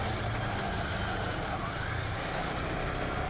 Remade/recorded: recorded